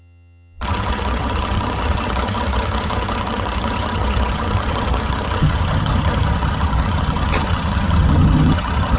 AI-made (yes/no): yes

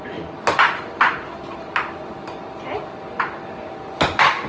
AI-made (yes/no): no